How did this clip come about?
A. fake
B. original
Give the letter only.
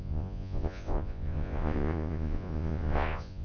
A